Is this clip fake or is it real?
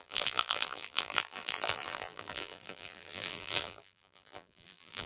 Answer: fake